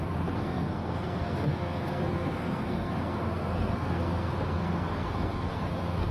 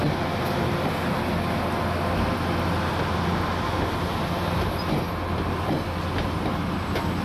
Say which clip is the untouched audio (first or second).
second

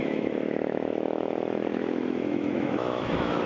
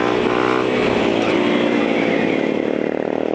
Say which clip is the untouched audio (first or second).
second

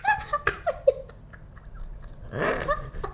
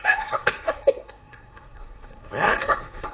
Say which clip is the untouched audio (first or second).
first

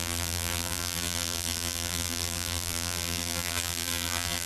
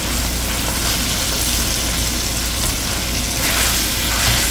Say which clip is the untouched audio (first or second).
second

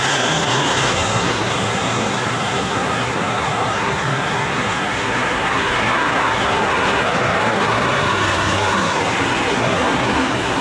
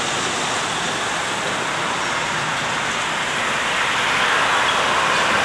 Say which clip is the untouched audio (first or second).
second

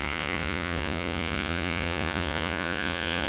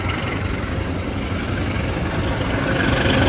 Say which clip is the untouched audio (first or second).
second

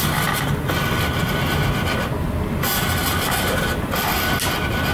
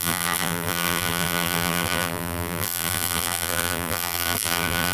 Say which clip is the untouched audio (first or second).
first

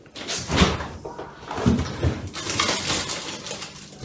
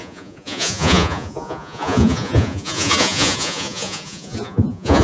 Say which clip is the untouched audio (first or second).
first